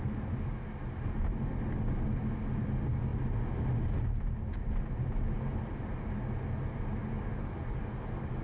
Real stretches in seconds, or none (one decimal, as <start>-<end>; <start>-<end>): 0.0-8.4